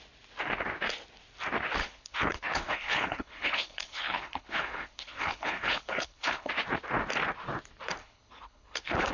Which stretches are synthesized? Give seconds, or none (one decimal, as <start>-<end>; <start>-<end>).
1.8-6.5; 8.0-9.1